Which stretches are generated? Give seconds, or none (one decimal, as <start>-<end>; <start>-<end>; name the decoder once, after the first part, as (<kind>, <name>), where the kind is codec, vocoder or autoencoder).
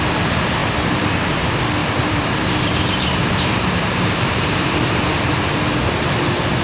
1.8-5.0 (vocoder, BigVGAN v2)